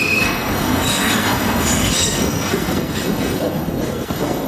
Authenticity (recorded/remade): remade